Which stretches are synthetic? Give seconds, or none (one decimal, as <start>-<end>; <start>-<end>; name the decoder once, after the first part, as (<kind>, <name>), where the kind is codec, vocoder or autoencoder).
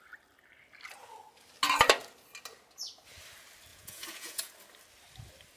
3.7-4.5 (vocoder, Vocos)